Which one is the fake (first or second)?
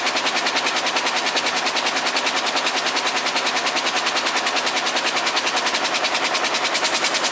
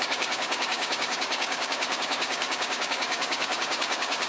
second